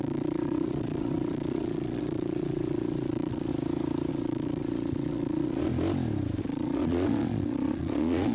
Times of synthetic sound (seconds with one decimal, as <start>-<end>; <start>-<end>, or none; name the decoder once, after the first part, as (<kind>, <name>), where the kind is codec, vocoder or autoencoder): 0.0-3.5 (vocoder, Vocos); 4.1-5.7; 6.4-8.3